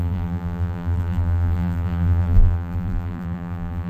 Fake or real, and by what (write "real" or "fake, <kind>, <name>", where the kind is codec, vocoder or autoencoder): fake, vocoder, BigVGAN v2